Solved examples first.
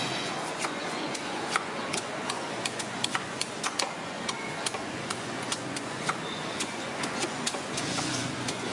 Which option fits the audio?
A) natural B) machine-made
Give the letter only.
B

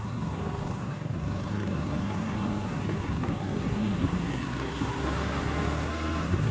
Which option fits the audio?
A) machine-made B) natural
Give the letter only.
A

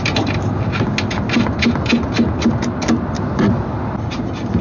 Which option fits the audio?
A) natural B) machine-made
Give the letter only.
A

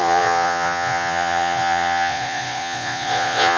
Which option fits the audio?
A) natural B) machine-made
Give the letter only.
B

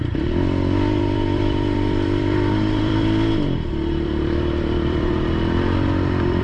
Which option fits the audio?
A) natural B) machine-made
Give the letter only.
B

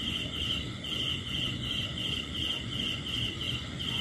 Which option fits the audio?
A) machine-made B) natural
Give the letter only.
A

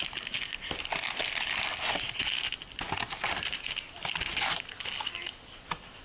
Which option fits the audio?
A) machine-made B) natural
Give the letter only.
B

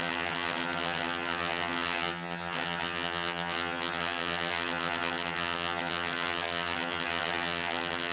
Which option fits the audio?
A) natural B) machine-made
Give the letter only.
B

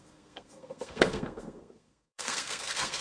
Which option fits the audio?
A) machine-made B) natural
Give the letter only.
A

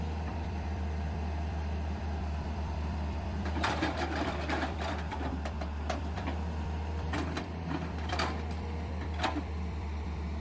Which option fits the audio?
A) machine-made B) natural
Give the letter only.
A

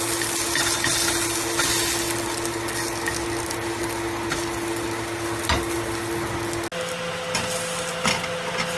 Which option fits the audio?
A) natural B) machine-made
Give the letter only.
A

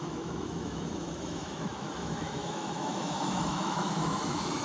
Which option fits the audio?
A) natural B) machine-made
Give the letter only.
B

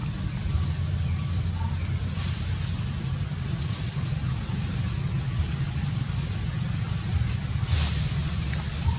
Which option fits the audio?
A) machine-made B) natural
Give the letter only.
B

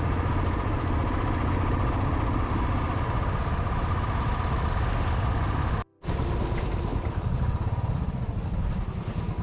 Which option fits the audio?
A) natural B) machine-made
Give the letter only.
A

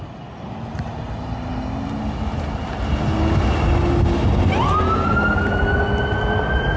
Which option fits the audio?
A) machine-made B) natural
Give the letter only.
B